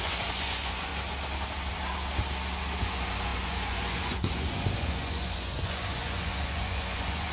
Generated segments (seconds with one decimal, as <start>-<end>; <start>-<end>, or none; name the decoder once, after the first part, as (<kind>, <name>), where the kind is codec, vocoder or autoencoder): 0.0-0.9 (vocoder, Vocos); 2.8-7.3